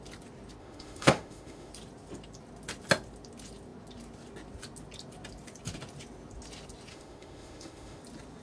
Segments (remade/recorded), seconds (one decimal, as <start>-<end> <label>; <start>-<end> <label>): 0.0-0.6 recorded; 0.6-1.7 remade; 1.7-6.9 recorded; 6.9-8.0 remade; 8.0-8.4 recorded

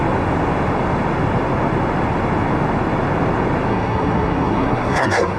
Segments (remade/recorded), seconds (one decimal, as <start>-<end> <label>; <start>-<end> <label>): 0.0-3.7 recorded; 3.7-5.4 remade

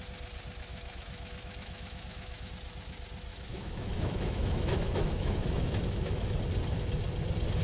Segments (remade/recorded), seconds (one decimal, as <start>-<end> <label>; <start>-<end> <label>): 0.0-0.7 recorded; 0.7-2.5 remade; 2.5-3.3 recorded; 3.3-6.4 remade; 6.4-7.6 recorded

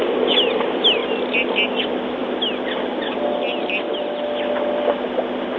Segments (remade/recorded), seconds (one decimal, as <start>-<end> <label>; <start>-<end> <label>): 0.0-5.6 recorded

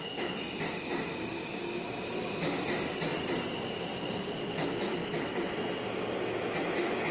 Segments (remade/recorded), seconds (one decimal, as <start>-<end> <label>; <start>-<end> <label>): 0.0-7.1 recorded